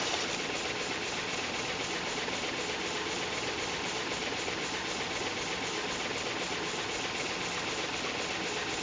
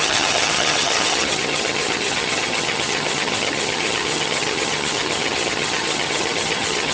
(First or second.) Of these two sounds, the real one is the first